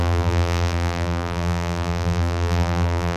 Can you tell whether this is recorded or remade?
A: remade